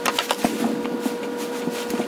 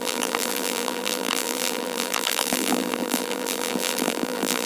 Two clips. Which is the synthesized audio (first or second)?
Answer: second